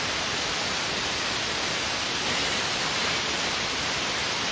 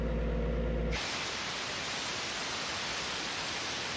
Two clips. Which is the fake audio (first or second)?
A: first